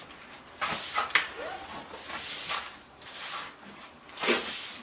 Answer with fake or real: real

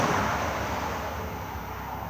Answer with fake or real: real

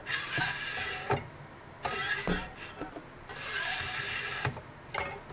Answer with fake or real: real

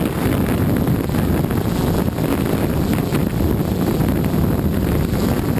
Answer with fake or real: real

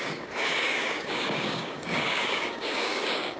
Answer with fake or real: fake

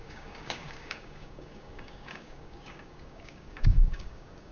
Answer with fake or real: fake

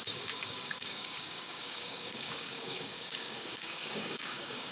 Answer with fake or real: fake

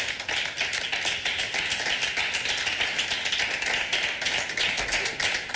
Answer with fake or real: real